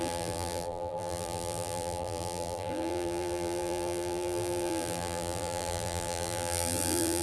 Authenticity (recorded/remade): remade